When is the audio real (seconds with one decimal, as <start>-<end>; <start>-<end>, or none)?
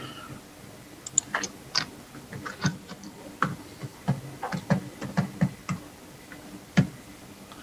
0.0-2.7; 3.2-7.6